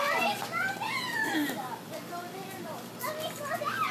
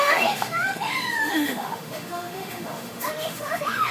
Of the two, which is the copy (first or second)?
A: second